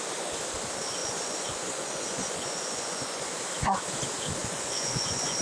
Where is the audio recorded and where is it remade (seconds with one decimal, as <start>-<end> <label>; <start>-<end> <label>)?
0.0-1.0 recorded; 1.0-3.4 remade; 3.4-4.4 recorded; 4.4-5.4 remade